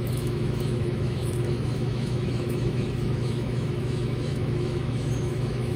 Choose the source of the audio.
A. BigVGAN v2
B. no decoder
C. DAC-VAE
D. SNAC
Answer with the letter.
C